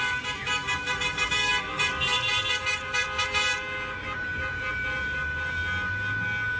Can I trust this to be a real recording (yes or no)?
yes